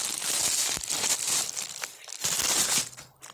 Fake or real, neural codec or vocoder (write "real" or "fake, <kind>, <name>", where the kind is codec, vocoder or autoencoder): real